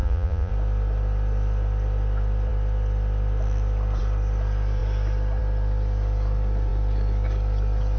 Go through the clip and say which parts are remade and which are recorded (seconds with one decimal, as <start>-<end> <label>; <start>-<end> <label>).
0.0-0.5 remade; 0.5-8.0 recorded